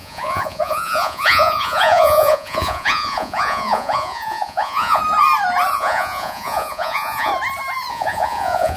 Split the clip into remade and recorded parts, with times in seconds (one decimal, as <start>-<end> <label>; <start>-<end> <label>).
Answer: 0.0-5.0 remade; 5.0-5.7 recorded; 5.7-7.3 remade; 7.3-7.9 recorded; 7.9-8.8 remade